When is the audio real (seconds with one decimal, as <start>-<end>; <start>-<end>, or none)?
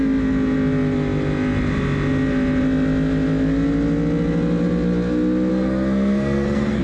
0.0-5.5